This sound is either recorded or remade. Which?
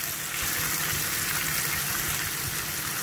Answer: recorded